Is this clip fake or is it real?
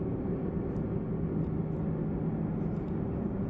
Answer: real